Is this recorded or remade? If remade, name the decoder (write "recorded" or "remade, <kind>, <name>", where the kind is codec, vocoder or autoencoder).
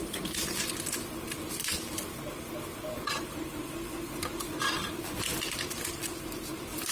recorded